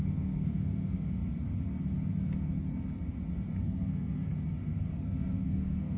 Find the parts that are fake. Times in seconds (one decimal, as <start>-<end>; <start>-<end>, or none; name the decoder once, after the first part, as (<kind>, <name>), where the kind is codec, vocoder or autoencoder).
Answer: 0.0-1.2 (codec, SNAC); 3.6-4.3; 4.9-6.0

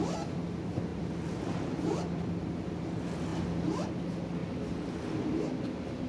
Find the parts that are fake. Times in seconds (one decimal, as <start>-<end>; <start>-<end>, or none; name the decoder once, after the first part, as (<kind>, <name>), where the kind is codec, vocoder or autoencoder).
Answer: 0.9-2.8 (vocoder, BigVGAN v2)

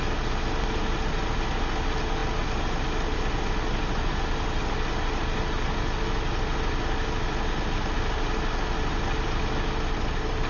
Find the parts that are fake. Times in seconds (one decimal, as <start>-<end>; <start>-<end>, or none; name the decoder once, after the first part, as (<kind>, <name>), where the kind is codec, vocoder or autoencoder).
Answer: none